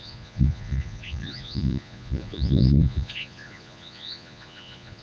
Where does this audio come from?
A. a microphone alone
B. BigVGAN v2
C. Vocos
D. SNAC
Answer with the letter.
C